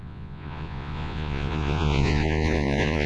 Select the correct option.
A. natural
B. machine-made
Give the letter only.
B